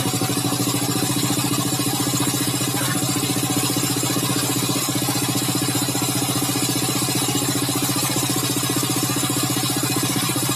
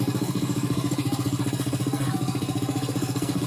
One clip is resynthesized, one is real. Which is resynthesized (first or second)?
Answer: second